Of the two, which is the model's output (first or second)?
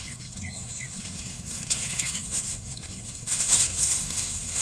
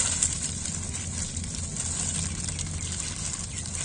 first